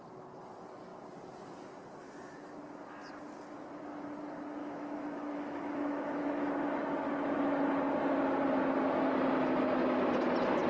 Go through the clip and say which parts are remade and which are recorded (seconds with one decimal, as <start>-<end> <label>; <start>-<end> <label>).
0.0-4.6 recorded; 4.6-6.5 remade; 6.5-10.7 recorded